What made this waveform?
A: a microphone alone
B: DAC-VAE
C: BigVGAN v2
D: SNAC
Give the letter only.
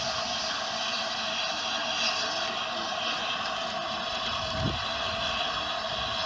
A